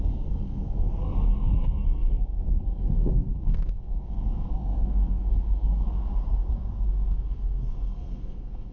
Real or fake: fake